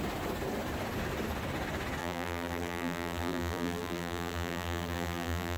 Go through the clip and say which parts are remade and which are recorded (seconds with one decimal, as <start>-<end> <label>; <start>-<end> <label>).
0.0-2.0 recorded; 2.0-5.6 remade